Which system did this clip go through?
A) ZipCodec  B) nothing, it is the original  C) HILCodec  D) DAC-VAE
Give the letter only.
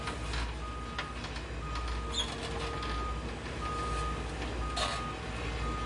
B